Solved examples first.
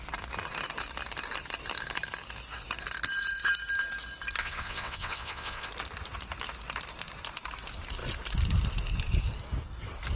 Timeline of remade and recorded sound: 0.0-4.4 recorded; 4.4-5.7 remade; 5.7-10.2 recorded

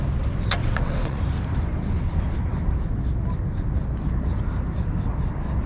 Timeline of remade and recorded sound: 0.0-0.6 recorded; 0.6-1.2 remade; 1.2-5.7 recorded

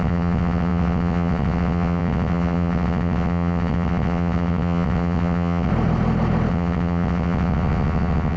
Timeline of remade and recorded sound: 0.0-5.7 remade; 5.7-6.5 recorded; 6.5-8.4 remade

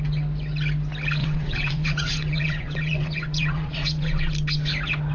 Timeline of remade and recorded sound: 0.0-1.2 recorded; 1.2-4.3 remade; 4.3-5.1 recorded

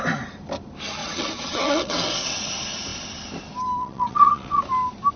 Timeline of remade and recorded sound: 0.0-1.0 recorded; 1.0-2.4 remade; 2.4-3.8 recorded; 3.8-4.6 remade; 4.6-5.2 recorded